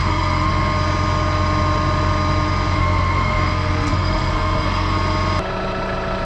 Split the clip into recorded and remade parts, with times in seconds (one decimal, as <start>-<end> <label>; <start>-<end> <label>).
0.0-0.5 remade; 0.5-2.8 recorded; 2.8-4.9 remade; 4.9-6.2 recorded